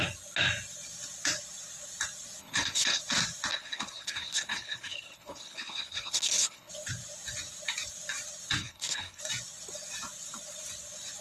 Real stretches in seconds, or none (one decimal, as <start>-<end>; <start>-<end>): 0.0-2.4; 3.0-3.5; 6.7-8.6; 9.2-11.2